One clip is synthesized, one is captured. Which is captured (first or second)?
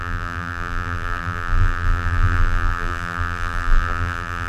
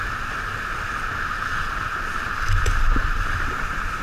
second